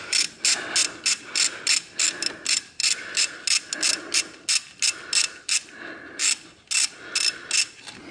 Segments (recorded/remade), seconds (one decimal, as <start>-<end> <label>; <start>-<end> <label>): 0.0-8.1 recorded